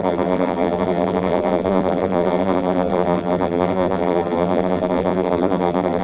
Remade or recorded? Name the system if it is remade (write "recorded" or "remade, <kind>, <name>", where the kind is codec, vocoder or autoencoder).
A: remade, vocoder, BigVGAN v2